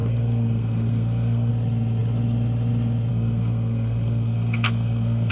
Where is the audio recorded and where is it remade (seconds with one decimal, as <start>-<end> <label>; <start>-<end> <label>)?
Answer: 0.0-1.5 remade; 1.5-3.1 recorded; 3.1-5.3 remade